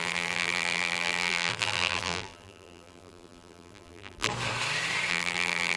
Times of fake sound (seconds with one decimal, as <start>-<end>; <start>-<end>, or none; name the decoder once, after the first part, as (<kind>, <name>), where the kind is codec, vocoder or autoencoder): 0.0-4.3 (vocoder, BigVGAN v2); 5.1-5.8